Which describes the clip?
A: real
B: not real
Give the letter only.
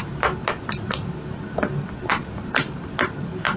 A